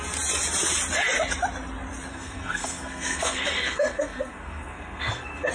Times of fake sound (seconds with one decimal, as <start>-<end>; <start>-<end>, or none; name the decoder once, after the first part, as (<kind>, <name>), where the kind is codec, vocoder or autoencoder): 2.1-5.5 (codec, SNAC)